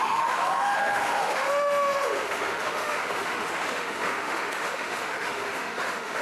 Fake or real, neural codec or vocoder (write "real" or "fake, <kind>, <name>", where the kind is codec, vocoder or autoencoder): fake, autoencoder, DAC-VAE